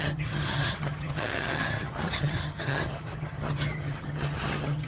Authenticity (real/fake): fake